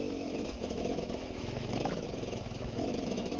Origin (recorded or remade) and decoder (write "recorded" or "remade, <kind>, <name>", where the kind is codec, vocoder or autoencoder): remade, autoencoder, DAC-VAE